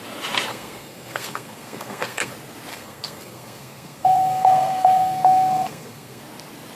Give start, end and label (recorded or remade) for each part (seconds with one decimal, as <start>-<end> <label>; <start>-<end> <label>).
0.0-0.5 recorded; 0.5-2.3 remade; 2.3-2.7 recorded; 2.7-6.2 remade; 6.2-6.8 recorded